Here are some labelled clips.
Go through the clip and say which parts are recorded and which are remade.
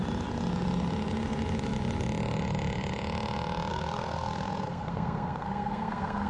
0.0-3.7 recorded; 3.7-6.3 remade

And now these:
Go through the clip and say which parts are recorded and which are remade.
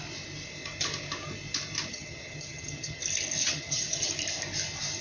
0.0-1.9 recorded; 1.9-3.0 remade; 3.0-3.4 recorded; 3.4-4.1 remade; 4.1-5.0 recorded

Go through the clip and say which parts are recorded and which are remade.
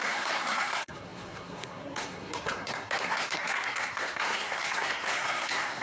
0.0-5.8 remade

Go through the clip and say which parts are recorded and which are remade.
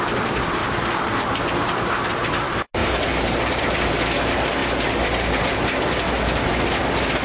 0.0-0.6 recorded; 0.6-1.4 remade; 1.4-2.8 recorded; 2.8-3.9 remade; 3.9-7.2 recorded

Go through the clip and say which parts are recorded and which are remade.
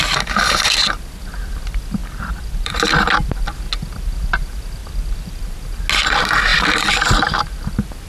0.0-2.0 recorded; 2.0-2.7 remade; 2.7-4.8 recorded; 4.8-5.4 remade; 5.4-8.1 recorded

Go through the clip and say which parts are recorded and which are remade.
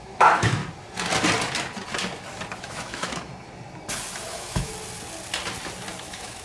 0.0-0.6 remade; 0.6-2.6 recorded; 2.6-3.3 remade; 3.3-4.3 recorded; 4.3-4.7 remade; 4.7-6.0 recorded; 6.0-6.4 remade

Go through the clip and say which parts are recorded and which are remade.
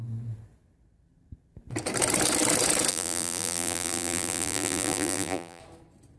0.0-2.9 recorded; 2.9-5.6 remade; 5.6-6.2 recorded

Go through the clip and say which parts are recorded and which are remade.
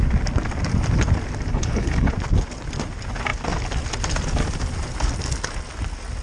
0.0-1.5 recorded; 1.5-2.1 remade; 2.1-6.2 recorded